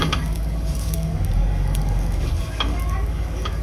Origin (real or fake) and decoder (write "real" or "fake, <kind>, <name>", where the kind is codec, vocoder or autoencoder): fake, codec, DAC